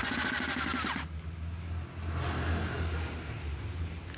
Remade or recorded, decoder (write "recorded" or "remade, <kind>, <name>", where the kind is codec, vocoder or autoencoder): recorded